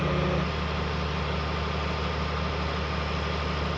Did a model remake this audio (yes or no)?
no